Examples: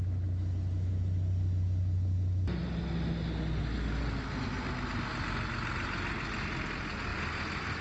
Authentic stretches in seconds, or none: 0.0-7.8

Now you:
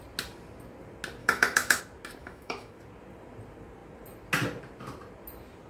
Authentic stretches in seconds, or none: 0.0-1.2; 1.8-2.2; 2.7-5.7